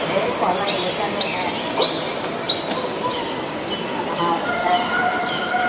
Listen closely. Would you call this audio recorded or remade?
recorded